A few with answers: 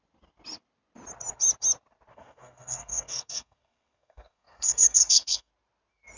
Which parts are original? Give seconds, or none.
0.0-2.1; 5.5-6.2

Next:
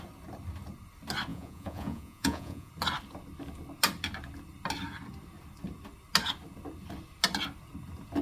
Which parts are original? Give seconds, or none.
0.0-1.3; 2.7-8.2

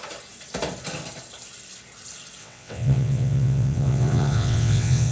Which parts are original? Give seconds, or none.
0.0-2.4

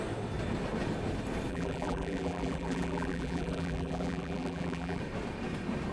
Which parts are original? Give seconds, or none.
0.0-1.5; 5.0-5.9

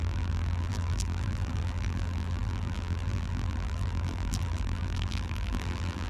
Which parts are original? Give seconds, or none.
none